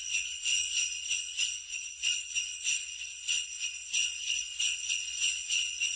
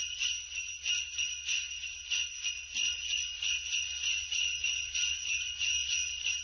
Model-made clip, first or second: first